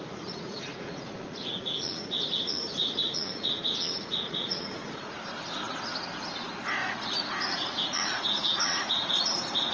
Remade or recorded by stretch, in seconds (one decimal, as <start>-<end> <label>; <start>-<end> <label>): 0.0-5.2 remade; 5.2-6.8 recorded; 6.8-9.7 remade

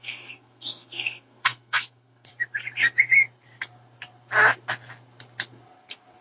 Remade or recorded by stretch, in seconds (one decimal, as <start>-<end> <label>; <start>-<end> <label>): 0.0-2.3 remade; 2.3-6.2 recorded

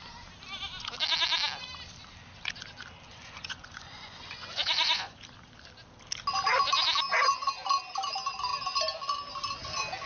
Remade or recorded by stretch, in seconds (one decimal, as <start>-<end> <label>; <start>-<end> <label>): 0.0-3.1 recorded; 3.1-5.2 remade; 5.2-10.1 recorded

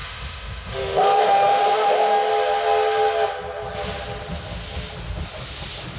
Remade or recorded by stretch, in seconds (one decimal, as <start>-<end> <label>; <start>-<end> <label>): 0.0-2.3 remade; 2.3-6.0 recorded

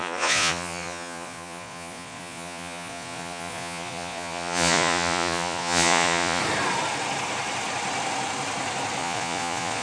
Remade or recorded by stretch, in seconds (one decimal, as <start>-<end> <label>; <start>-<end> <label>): 0.0-6.4 remade; 6.4-9.0 recorded; 9.0-9.8 remade

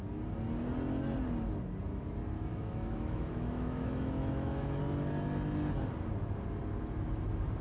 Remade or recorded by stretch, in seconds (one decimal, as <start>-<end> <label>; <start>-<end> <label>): 0.0-2.5 recorded; 2.5-4.8 remade; 4.8-7.6 recorded

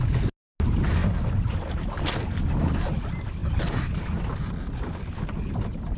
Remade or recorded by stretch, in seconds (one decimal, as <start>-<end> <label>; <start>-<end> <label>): 0.0-1.0 recorded; 1.0-2.0 remade; 2.0-6.0 recorded

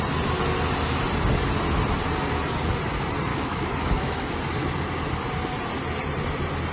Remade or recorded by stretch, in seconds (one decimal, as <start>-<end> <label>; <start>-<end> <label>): 0.0-3.3 recorded; 3.3-4.4 remade; 4.4-6.7 recorded